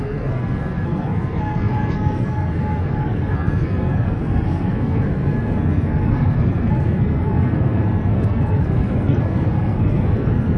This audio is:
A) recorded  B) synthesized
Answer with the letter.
B